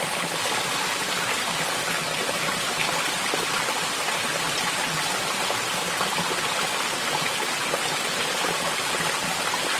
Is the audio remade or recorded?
recorded